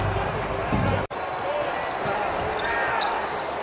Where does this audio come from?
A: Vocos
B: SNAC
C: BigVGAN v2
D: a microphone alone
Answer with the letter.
D